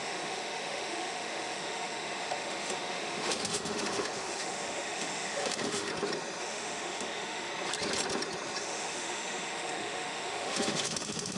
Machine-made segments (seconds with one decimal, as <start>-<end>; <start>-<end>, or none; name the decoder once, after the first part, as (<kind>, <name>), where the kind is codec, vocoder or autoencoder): 0.0-5.9 (autoencoder, DAC-VAE); 6.4-7.5; 8.6-11.4